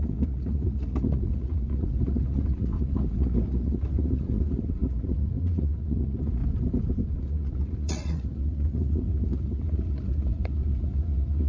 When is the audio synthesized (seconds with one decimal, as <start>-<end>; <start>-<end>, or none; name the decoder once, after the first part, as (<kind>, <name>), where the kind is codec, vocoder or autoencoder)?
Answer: 0.0-6.4 (vocoder, Vocos); 7.2-11.5